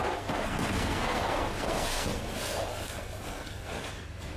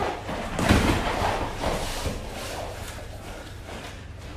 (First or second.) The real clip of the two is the second